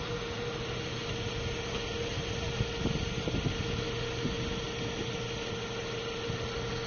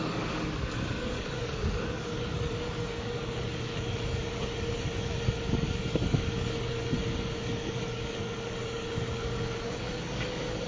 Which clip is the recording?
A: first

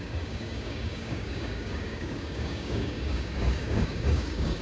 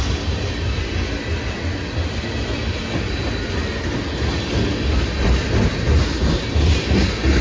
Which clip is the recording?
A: second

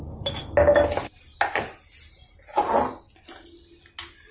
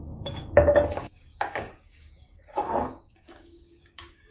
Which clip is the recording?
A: first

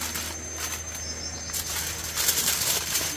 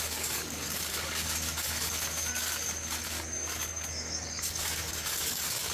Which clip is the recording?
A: first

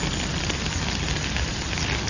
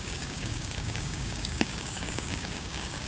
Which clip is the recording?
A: first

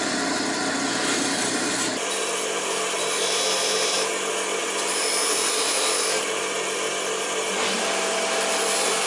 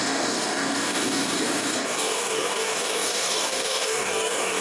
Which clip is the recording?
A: first